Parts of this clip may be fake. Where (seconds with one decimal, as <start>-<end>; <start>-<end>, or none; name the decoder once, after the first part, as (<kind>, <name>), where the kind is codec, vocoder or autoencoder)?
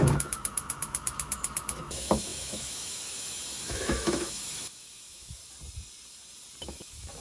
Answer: 0.0-5.4 (autoencoder, DAC-VAE); 6.6-7.2